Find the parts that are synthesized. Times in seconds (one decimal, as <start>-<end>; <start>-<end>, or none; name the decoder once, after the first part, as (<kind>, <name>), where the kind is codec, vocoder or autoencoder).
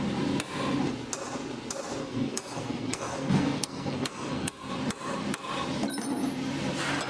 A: 2.0-4.7 (codec, SNAC)